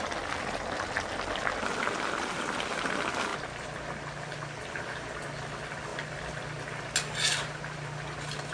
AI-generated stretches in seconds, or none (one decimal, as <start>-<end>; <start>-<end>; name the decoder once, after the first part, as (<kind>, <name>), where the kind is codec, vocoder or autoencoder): none